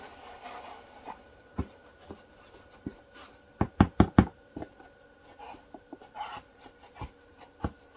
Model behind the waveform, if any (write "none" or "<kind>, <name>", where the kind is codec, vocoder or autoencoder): vocoder, BigVGAN v2